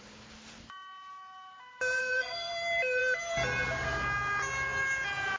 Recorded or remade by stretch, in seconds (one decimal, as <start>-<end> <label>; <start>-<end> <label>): 0.0-2.0 recorded; 2.0-2.5 remade; 2.5-5.4 recorded